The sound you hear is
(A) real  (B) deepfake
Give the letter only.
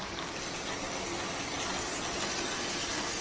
A